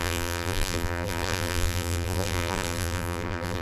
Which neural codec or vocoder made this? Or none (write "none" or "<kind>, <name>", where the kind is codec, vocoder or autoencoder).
vocoder, BigVGAN v2